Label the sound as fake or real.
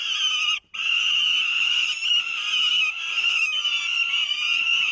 real